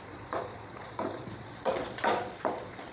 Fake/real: fake